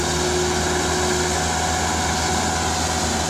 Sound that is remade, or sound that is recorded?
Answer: recorded